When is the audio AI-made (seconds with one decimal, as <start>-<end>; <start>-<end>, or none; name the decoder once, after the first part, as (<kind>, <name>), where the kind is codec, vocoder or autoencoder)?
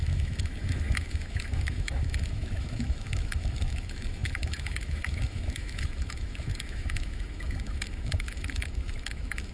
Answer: 0.0-9.5 (autoencoder, DAC-VAE)